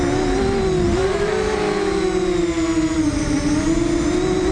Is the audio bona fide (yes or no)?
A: yes